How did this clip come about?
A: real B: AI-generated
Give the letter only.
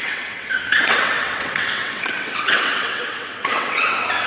B